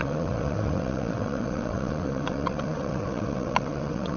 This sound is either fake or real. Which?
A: fake